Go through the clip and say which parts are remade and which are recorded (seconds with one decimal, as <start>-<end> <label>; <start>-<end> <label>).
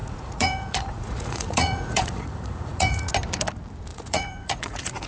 0.0-3.1 remade; 3.1-3.9 recorded; 3.9-5.1 remade